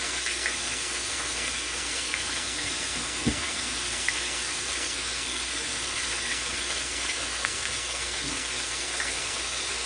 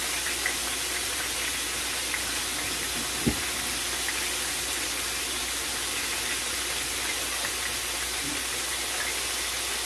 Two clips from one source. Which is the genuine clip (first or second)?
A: second